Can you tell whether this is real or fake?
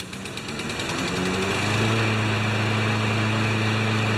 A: real